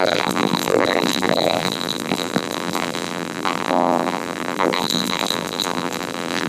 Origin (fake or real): fake